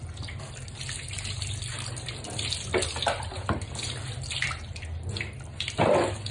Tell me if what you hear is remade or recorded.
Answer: recorded